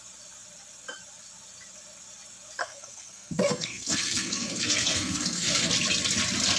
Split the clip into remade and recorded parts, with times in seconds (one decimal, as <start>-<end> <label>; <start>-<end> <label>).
0.0-2.6 recorded; 2.6-5.7 remade; 5.7-6.6 recorded